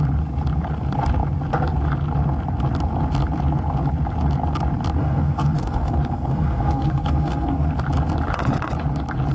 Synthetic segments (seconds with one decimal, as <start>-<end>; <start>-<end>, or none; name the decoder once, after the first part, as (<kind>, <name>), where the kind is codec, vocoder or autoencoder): 5.0-7.7 (codec, SNAC)